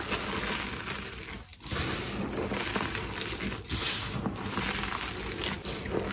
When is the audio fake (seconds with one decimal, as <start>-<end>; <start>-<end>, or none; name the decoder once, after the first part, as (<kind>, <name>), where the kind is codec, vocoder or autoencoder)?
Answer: none